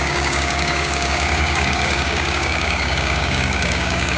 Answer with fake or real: fake